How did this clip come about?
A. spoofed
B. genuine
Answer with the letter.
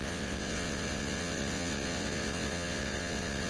A